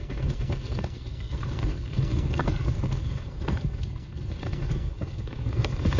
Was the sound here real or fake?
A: fake